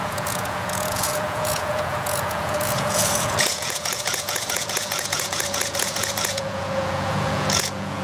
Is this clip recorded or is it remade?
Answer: remade